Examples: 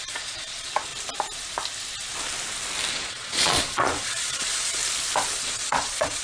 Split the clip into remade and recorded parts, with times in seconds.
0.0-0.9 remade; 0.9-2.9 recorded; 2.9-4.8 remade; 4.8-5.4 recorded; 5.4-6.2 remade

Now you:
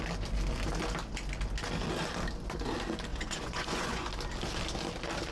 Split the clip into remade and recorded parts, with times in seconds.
0.0-3.1 recorded; 3.1-4.1 remade; 4.1-5.3 recorded

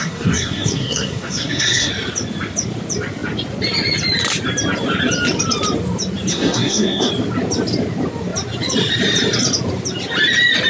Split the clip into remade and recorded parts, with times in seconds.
0.0-1.9 remade; 1.9-6.3 recorded; 6.3-7.1 remade; 7.1-10.7 recorded

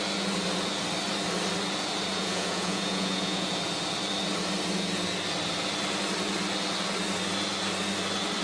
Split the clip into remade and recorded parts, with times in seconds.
0.0-2.1 recorded; 2.1-3.5 remade; 3.5-8.4 recorded

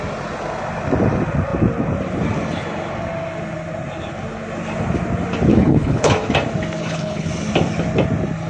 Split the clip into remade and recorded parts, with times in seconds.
0.0-5.5 recorded; 5.5-6.1 remade; 6.1-6.8 recorded; 6.8-7.3 remade; 7.3-8.5 recorded

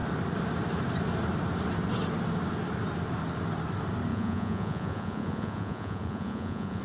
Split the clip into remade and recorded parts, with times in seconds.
0.0-4.1 recorded; 4.1-6.8 remade